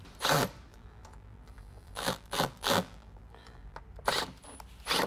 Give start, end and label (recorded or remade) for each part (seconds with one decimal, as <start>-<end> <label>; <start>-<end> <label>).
0.0-0.7 recorded; 0.7-3.8 remade; 3.8-5.1 recorded